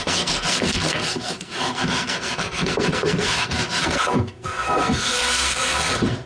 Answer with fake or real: fake